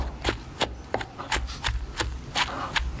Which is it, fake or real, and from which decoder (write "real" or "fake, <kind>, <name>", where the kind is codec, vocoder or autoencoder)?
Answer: real